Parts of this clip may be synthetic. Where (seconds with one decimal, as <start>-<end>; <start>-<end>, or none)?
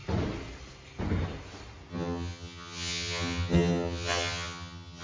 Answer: 1.9-5.0